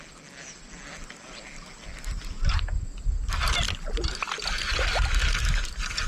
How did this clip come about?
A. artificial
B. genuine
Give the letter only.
B